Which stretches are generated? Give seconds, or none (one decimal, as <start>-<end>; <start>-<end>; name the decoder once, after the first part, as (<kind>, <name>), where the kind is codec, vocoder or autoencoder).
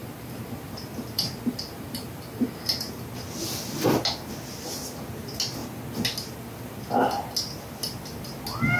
0.0-2.9 (vocoder, BigVGAN v2)